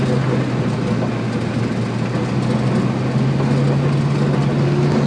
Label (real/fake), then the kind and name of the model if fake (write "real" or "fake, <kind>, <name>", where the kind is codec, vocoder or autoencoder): real